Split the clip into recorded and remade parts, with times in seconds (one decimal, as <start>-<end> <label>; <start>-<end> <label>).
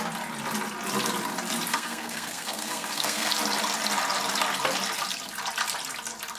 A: 0.0-1.7 recorded; 1.7-3.3 remade; 3.3-6.4 recorded